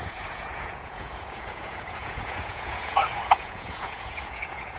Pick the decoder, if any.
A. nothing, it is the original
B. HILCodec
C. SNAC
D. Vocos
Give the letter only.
D